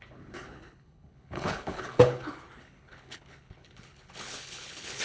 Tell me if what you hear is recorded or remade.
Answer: remade